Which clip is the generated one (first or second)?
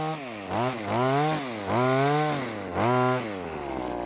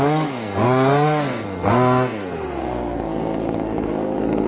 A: second